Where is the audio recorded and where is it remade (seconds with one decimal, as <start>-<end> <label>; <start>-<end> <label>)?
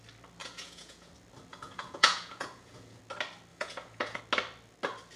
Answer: 0.0-0.4 recorded; 0.4-1.1 remade; 1.1-1.5 recorded; 1.5-3.0 remade; 3.0-3.5 recorded; 3.5-4.2 remade; 4.2-5.2 recorded